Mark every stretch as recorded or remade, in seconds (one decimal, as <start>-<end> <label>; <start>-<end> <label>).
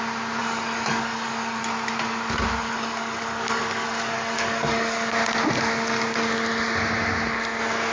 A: 0.0-0.4 recorded; 0.4-1.6 remade; 1.6-2.6 recorded; 2.6-5.1 remade; 5.1-7.9 recorded